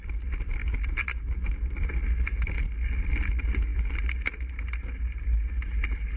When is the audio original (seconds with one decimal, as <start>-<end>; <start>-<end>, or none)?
0.0-6.2